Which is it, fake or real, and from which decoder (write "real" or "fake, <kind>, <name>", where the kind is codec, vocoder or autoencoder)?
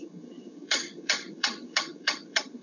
fake, vocoder, HiFi-GAN